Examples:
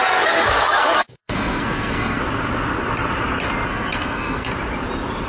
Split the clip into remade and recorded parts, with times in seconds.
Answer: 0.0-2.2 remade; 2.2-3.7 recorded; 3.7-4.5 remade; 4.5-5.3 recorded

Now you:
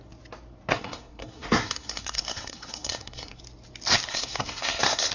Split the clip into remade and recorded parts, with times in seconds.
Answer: 0.0-0.7 recorded; 0.7-3.4 remade; 3.4-4.1 recorded; 4.1-5.1 remade

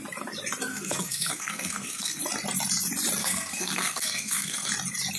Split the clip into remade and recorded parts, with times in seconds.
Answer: 0.0-0.7 recorded; 0.7-2.2 remade; 2.2-3.2 recorded; 3.2-4.7 remade; 4.7-5.2 recorded

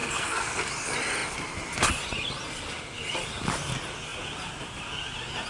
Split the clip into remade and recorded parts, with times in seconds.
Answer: 0.0-0.7 remade; 0.7-5.5 recorded